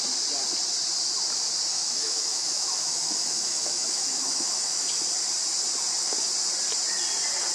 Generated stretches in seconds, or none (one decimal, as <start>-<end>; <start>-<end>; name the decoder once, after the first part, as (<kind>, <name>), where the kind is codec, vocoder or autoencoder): 1.7-4.9 (autoencoder, DAC-VAE)